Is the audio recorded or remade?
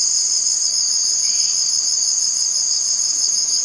recorded